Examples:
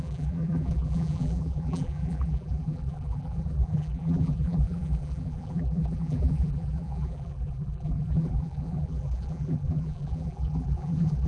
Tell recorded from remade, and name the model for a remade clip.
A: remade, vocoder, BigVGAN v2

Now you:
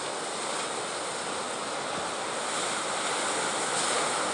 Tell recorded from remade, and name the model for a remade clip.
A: recorded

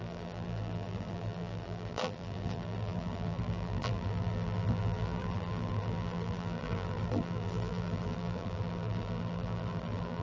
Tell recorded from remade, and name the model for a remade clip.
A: remade, vocoder, BigVGAN v2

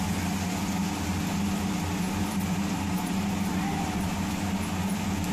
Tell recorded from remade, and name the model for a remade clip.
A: recorded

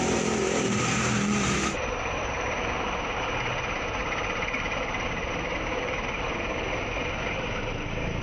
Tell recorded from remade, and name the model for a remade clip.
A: remade, vocoder, BigVGAN v2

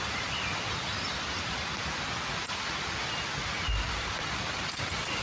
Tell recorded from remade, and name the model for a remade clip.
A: remade, vocoder, BigVGAN v2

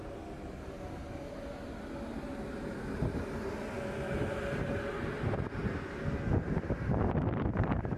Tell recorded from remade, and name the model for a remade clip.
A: recorded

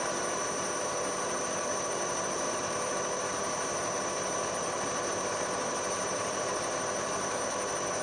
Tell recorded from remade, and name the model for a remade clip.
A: remade, vocoder, BigVGAN v2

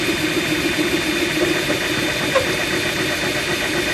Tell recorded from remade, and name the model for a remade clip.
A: recorded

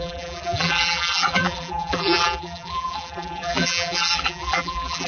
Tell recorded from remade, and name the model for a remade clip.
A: remade, vocoder, BigVGAN v2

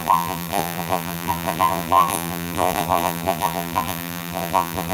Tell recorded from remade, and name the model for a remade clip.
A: remade, vocoder, BigVGAN v2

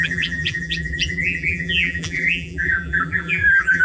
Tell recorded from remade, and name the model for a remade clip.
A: remade, vocoder, BigVGAN v2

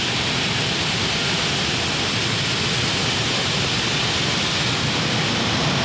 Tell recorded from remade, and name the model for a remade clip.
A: recorded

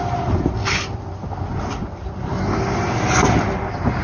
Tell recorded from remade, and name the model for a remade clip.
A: recorded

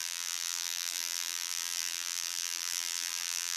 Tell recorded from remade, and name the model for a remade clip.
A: remade, vocoder, BigVGAN v2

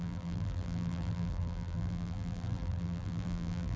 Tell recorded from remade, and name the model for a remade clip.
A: remade, vocoder, BigVGAN v2